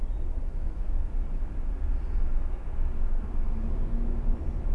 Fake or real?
real